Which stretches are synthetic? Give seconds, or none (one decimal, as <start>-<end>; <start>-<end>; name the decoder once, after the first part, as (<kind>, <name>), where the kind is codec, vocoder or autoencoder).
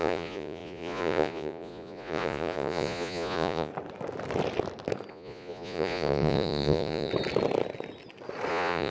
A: 0.0-3.7 (vocoder, Vocos); 5.1-7.1; 8.5-8.9